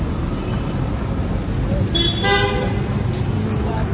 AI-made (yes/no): no